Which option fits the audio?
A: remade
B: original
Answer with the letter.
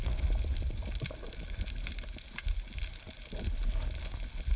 B